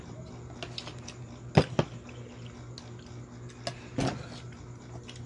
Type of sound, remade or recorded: recorded